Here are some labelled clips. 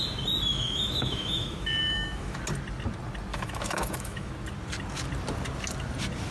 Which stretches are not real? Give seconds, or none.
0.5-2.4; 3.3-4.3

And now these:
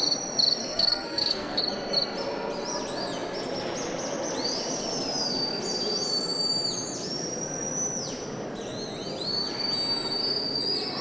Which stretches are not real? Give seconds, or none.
0.6-1.6